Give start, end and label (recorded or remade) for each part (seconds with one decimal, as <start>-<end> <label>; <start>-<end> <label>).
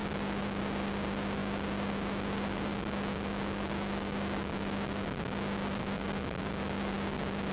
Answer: 0.0-0.6 remade; 0.6-2.7 recorded; 2.7-7.5 remade